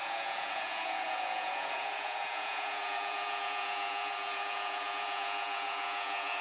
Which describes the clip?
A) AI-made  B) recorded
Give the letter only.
A